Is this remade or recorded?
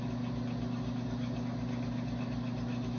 recorded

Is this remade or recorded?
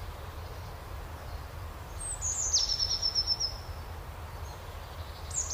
recorded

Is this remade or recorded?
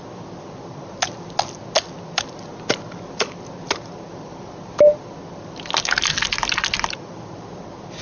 recorded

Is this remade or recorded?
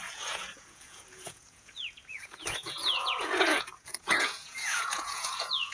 remade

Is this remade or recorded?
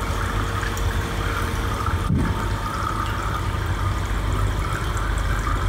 recorded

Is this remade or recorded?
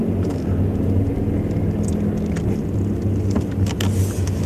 recorded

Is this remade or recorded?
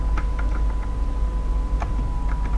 recorded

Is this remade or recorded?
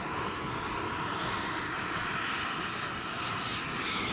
recorded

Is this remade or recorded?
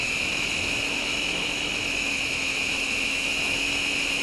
remade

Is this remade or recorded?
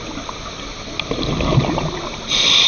recorded